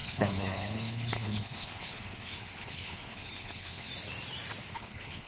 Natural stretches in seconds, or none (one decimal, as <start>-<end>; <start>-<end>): 3.9-4.7